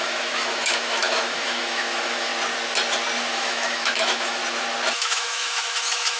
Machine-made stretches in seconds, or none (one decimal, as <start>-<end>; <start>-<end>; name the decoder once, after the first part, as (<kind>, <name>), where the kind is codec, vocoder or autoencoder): 0.0-2.3 (autoencoder, DAC-VAE); 3.3-4.4; 4.9-6.2